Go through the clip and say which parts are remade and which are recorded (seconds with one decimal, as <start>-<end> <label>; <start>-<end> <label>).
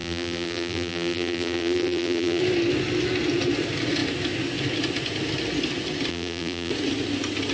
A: 0.0-2.4 remade; 2.4-6.1 recorded; 6.1-6.7 remade; 6.7-7.5 recorded